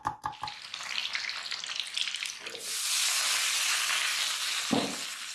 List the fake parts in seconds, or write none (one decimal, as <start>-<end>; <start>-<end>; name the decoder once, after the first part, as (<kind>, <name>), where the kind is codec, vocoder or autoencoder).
none